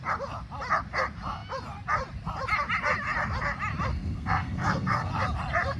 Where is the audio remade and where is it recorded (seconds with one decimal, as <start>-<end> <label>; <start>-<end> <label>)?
0.0-3.9 recorded; 3.9-5.1 remade; 5.1-5.8 recorded

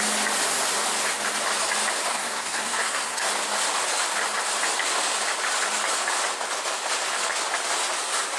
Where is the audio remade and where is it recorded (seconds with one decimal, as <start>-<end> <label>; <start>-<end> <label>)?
0.0-2.1 recorded; 2.1-3.3 remade; 3.3-8.4 recorded

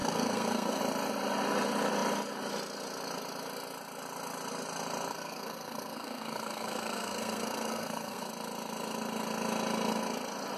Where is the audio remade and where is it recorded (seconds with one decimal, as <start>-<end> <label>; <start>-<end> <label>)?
0.0-0.8 remade; 0.8-5.1 recorded; 5.1-8.3 remade; 8.3-10.6 recorded

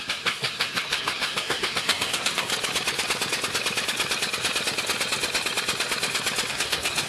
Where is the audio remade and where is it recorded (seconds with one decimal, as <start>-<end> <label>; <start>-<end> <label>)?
0.0-2.5 remade; 2.5-6.5 recorded; 6.5-7.1 remade